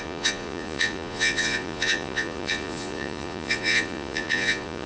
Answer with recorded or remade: remade